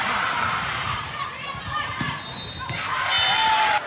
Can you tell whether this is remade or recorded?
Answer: recorded